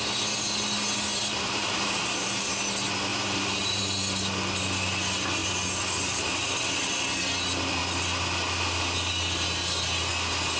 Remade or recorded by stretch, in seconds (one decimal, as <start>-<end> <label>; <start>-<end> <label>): 0.0-1.1 recorded; 1.1-2.5 remade; 2.5-3.1 recorded; 3.1-3.8 remade; 3.8-10.6 recorded

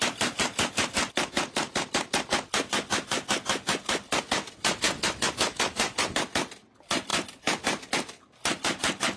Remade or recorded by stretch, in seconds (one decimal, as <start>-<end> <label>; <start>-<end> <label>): 0.0-9.2 recorded

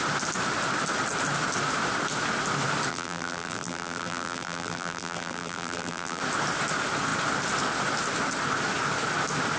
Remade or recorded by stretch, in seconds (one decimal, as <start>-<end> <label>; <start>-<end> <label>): 0.0-2.9 recorded; 2.9-6.2 remade; 6.2-9.6 recorded

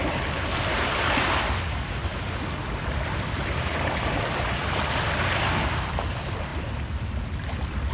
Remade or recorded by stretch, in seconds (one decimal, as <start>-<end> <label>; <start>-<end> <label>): 0.0-6.5 remade; 6.5-7.2 recorded; 7.2-7.9 remade

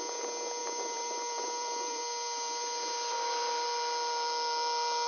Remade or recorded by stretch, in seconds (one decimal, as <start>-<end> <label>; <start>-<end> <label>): 0.0-0.6 recorded; 0.6-2.0 remade; 2.0-5.1 recorded

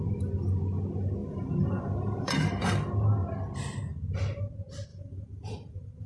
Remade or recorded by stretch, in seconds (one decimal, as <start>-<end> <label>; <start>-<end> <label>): 0.0-1.2 recorded; 1.2-2.6 remade; 2.6-4.9 recorded; 4.9-6.1 remade